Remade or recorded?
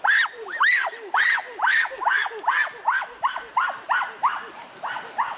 recorded